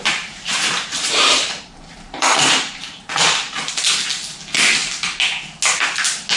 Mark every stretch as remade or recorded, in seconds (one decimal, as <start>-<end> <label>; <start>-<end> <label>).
0.0-3.0 remade; 3.0-6.4 recorded